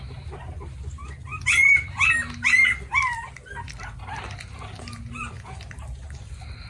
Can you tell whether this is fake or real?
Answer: real